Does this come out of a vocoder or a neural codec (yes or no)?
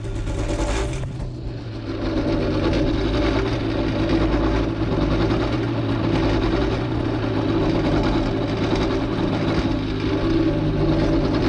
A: no